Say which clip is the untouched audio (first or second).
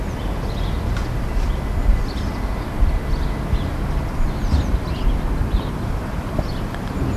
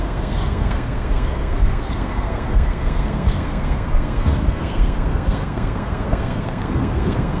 first